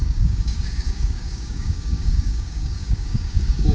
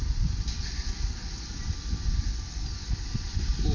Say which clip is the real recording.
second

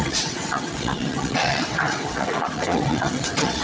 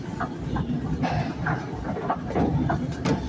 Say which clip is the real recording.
second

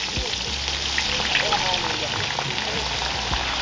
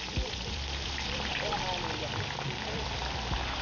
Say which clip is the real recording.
first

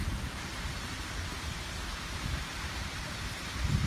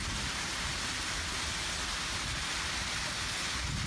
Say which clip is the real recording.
second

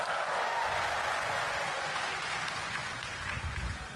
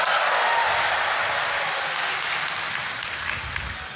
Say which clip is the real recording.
second